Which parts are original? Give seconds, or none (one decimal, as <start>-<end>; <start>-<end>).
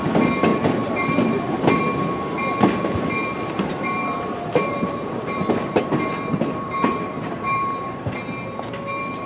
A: 0.0-0.5; 1.8-3.2; 8.1-9.3